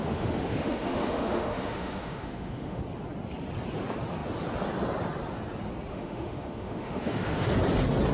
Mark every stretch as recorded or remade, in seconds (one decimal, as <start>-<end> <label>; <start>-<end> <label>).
0.0-2.8 remade; 2.8-5.9 recorded; 5.9-7.5 remade; 7.5-8.1 recorded